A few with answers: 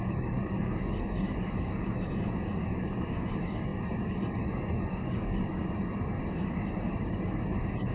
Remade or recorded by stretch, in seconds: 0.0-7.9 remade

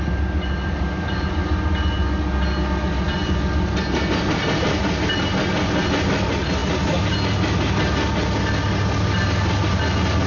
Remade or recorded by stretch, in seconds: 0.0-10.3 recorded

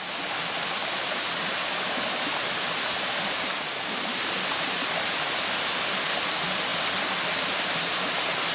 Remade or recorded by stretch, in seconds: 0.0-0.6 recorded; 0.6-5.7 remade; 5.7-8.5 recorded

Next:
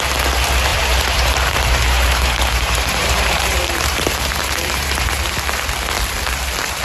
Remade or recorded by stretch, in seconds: 0.0-0.7 recorded; 0.7-4.8 remade; 4.8-6.8 recorded

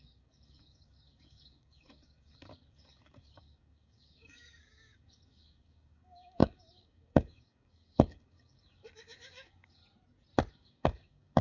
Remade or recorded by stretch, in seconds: 0.0-9.8 remade; 9.8-10.5 recorded; 10.5-11.4 remade

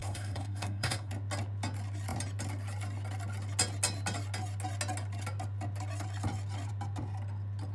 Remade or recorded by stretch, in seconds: 0.0-1.1 remade; 1.1-7.7 recorded